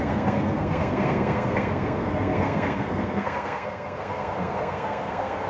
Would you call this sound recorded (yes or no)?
no